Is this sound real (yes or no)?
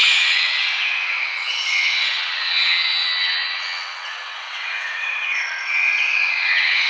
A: no